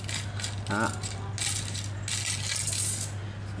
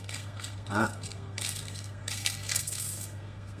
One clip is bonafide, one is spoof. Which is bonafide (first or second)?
first